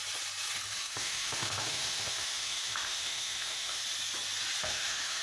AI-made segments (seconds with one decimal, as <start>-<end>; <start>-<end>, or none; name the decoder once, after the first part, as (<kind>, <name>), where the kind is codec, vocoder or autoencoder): 0.8-3.8 (autoencoder, DAC-VAE); 4.6-5.2